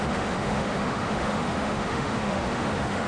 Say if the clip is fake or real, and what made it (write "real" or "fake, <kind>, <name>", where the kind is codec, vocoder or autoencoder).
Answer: fake, autoencoder, DAC-VAE